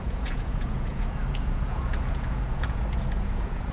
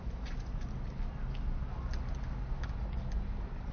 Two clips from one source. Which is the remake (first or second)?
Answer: first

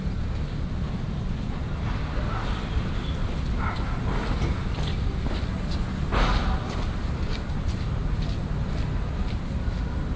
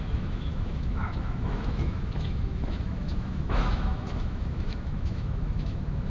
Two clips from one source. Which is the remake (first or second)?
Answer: second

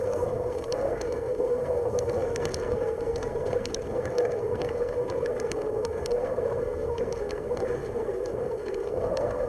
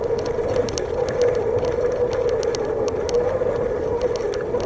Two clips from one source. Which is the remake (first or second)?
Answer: first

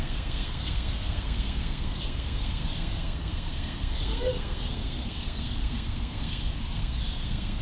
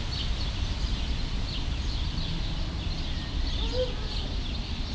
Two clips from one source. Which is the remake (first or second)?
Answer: first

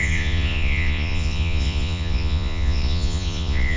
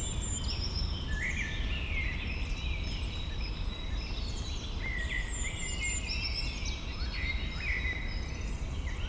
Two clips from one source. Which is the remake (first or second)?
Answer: first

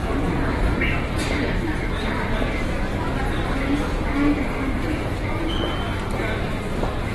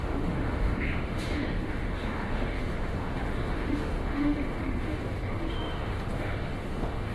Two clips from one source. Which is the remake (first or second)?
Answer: second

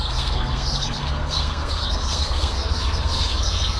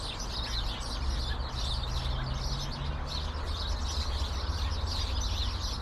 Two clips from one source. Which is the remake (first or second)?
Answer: first